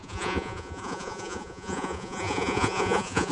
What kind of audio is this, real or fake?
fake